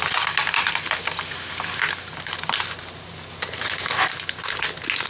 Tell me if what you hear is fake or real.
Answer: real